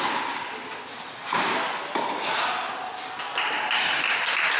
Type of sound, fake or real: real